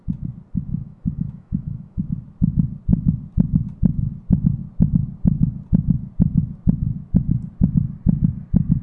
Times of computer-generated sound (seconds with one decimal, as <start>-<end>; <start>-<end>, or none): 0.7-2.0